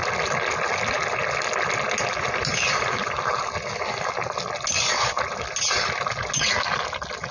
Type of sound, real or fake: real